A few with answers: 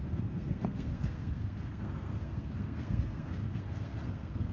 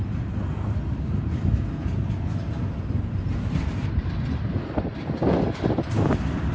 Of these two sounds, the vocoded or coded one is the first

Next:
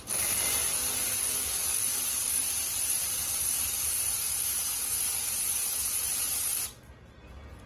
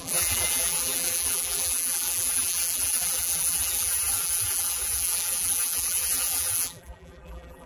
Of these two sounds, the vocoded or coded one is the second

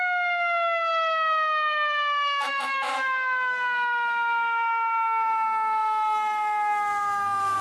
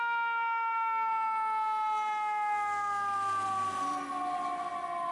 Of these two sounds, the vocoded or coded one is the first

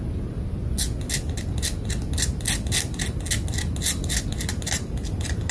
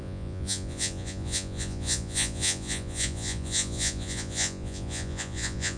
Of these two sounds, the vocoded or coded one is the second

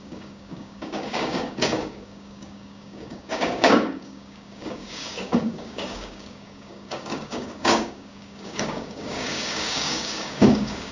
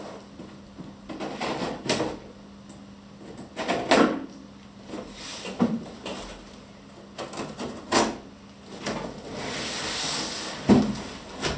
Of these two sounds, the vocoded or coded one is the first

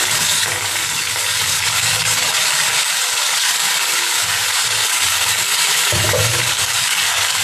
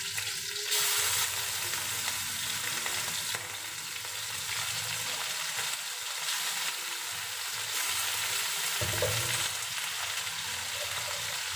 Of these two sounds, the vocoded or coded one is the first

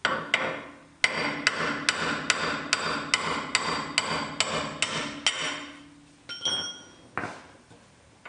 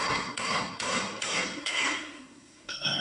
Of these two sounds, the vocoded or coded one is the second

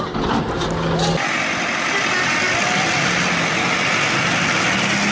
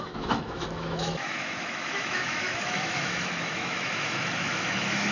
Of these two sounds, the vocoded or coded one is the second